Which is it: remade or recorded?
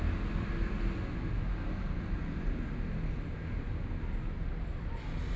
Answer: recorded